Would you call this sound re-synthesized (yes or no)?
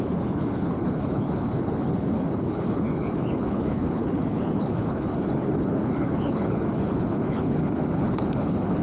yes